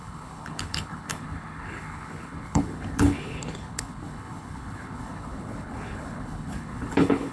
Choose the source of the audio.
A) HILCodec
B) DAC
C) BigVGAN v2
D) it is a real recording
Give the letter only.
A